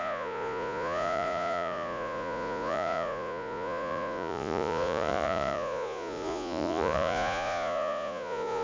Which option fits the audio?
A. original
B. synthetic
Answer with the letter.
B